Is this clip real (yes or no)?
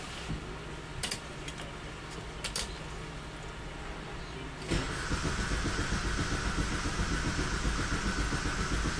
yes